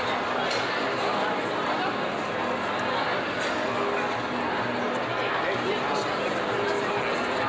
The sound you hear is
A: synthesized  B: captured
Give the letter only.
B